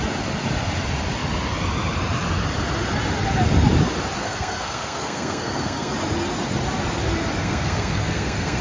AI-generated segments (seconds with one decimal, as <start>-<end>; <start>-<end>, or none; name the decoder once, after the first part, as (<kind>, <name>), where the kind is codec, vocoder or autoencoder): 4.2-5.9 (codec, SNAC); 7.4-8.6